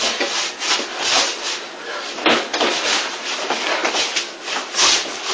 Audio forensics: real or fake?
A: real